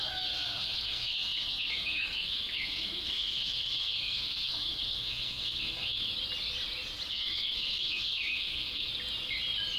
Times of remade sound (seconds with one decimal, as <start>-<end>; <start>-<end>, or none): 0.0-6.1; 7.1-8.9

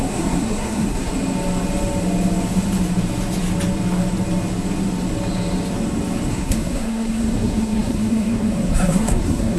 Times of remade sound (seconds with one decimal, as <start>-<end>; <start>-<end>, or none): 0.0-1.1; 6.3-9.6

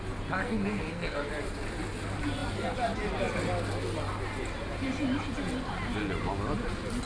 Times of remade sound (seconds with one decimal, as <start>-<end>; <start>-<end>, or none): 0.4-1.3

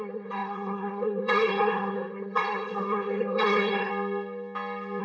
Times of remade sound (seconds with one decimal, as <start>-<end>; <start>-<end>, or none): 0.0-3.9